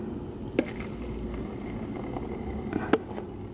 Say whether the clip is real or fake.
real